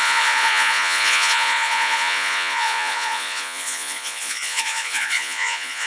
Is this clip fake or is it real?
fake